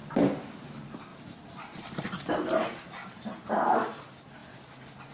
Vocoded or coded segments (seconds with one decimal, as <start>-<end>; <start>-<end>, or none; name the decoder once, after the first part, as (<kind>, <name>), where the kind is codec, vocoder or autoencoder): 1.1-2.0 (vocoder, BigVGAN v2); 3.0-4.0

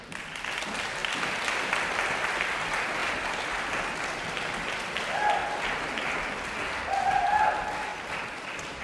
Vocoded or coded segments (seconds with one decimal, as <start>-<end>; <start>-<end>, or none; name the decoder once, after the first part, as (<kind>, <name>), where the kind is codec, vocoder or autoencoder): 1.0-2.3 (vocoder, BigVGAN v2); 3.0-4.9; 7.9-8.8

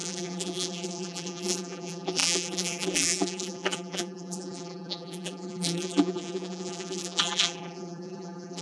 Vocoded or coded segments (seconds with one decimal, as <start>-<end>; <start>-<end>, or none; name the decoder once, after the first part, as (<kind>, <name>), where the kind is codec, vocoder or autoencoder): 0.0-8.6 (vocoder, BigVGAN v2)

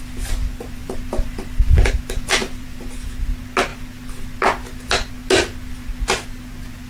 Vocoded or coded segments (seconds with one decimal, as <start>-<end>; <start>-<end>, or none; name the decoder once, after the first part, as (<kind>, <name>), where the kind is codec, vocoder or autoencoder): 0.8-2.0 (vocoder, BigVGAN v2); 2.4-3.3

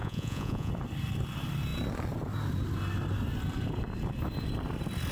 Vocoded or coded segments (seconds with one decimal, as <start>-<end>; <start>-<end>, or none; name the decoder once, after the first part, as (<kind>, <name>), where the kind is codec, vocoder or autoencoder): 0.0-0.7 (vocoder, Vocos)